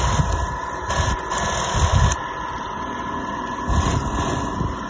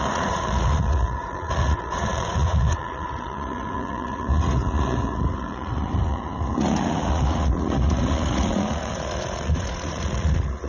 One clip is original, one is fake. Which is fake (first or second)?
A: second